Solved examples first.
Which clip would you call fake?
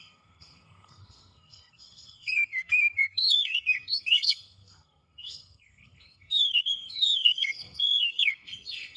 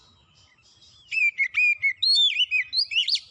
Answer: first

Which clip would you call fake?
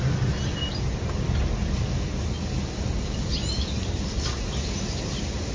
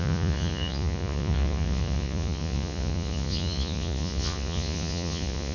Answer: second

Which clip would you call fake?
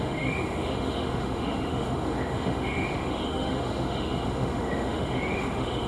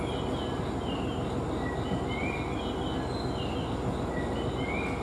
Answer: first